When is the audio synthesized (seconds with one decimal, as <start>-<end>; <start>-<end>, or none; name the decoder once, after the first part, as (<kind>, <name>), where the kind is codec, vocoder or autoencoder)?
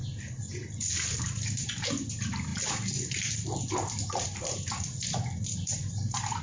none